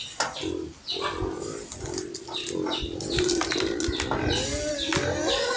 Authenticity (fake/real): real